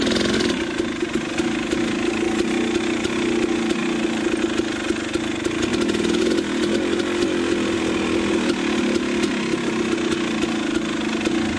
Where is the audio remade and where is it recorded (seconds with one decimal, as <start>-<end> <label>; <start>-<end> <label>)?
0.0-11.6 recorded